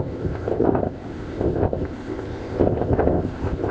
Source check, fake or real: fake